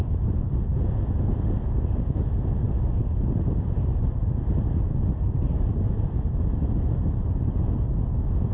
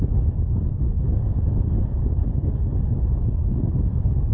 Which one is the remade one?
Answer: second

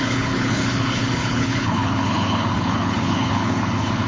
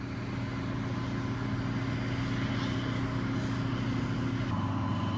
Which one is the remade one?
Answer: first